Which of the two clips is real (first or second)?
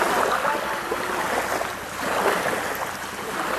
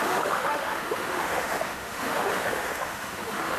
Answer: first